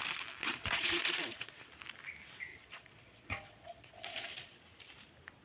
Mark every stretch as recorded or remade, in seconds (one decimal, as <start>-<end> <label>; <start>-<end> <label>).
0.0-0.4 recorded; 0.4-1.5 remade; 1.5-2.5 recorded; 2.5-4.6 remade; 4.6-5.4 recorded